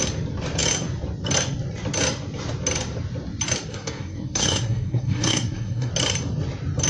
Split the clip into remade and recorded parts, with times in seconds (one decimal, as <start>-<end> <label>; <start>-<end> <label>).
0.0-3.7 recorded; 3.7-5.9 remade; 5.9-6.9 recorded